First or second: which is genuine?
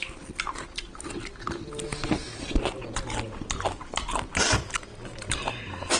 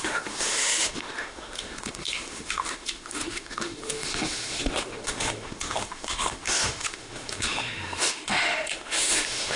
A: first